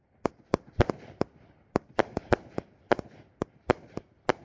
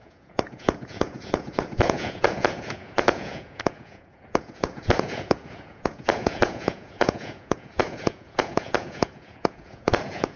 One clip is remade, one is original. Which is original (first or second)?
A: first